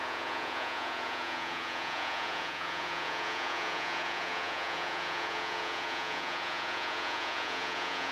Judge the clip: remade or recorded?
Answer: remade